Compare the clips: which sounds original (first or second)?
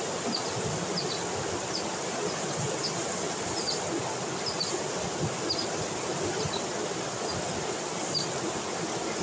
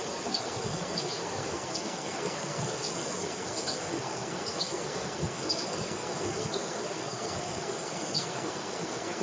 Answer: first